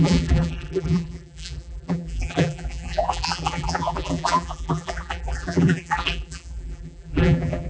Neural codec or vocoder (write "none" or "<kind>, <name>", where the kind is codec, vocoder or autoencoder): vocoder, BigVGAN v2